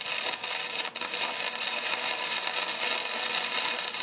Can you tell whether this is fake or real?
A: real